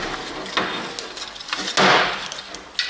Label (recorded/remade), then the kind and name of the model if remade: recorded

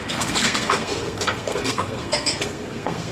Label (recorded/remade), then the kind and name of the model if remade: remade, codec, SNAC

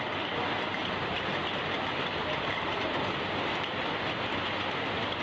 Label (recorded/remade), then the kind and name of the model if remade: remade, vocoder, BigVGAN v2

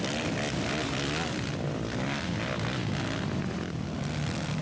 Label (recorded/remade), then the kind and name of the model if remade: recorded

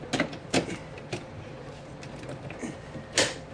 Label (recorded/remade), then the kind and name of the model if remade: recorded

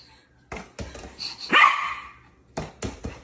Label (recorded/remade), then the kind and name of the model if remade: recorded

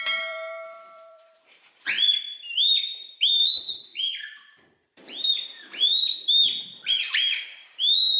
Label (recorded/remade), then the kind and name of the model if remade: remade, vocoder, BigVGAN v2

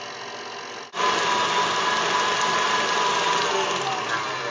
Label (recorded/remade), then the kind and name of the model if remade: recorded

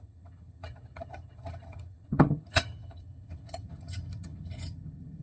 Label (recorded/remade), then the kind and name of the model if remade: remade, vocoder, HiFi-GAN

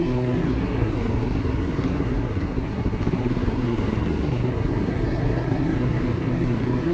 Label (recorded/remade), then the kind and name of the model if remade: remade, codec, SNAC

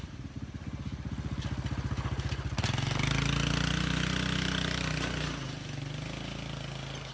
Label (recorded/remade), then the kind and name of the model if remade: recorded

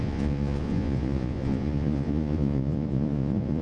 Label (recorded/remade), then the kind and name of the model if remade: remade, vocoder, Vocos